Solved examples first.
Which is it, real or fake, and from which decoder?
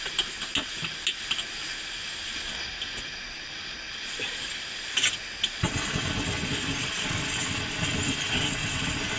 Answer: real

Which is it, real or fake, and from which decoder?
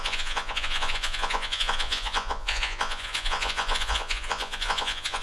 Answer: fake, vocoder, Vocos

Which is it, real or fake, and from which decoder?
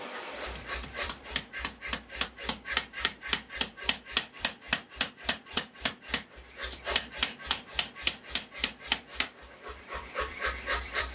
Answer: fake, vocoder, BigVGAN v2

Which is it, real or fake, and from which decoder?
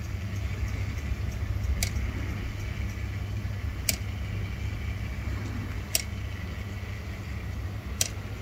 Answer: real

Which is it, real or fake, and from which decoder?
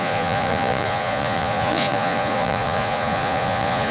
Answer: fake, vocoder, Vocos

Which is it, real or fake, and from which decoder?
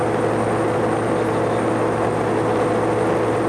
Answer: real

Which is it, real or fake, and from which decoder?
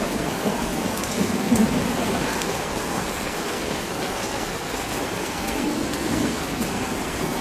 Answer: fake, codec, SNAC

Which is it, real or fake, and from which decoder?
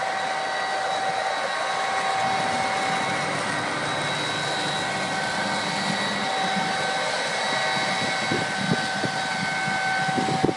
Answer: real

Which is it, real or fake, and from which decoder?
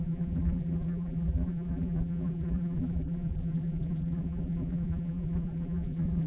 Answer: fake, vocoder, BigVGAN v2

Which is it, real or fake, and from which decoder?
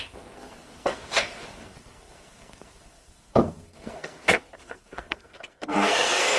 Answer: fake, codec, SNAC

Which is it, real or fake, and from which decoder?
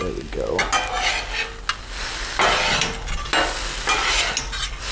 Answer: real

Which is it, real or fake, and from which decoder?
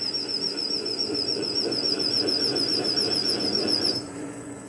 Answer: fake, vocoder, Vocos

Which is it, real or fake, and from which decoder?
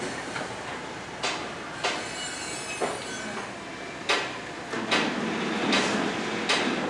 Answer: real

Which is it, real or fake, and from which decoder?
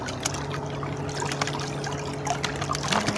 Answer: real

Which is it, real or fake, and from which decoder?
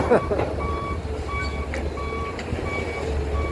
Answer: real